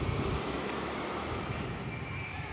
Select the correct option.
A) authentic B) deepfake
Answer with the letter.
B